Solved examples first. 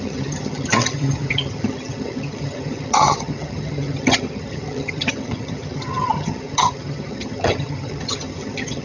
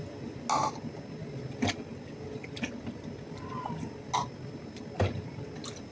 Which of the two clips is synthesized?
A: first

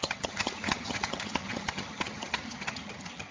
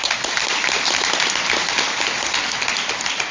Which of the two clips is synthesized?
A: first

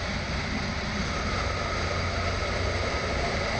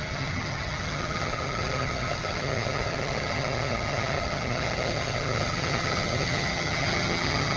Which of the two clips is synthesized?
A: second